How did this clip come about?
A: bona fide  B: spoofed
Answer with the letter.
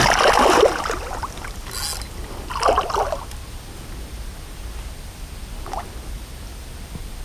A